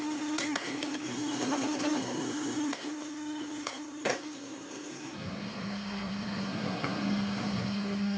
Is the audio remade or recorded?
remade